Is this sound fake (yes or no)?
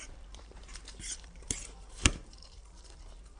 yes